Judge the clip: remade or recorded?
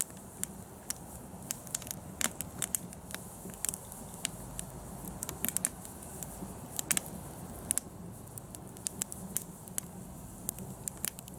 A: recorded